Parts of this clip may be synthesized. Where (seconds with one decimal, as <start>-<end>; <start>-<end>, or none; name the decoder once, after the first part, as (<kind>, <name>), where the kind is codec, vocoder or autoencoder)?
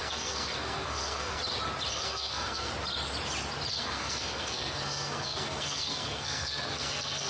0.0-1.4 (codec, SNAC); 1.9-2.7; 3.7-7.3